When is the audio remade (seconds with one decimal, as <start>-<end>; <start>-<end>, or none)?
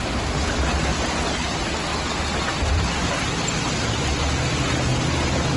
none